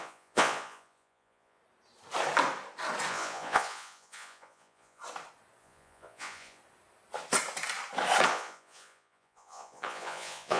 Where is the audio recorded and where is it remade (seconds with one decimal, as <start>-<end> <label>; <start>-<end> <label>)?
0.0-1.6 remade; 1.6-3.1 recorded; 3.1-5.0 remade; 5.0-5.6 recorded; 5.6-6.6 remade; 6.6-8.3 recorded; 8.3-10.6 remade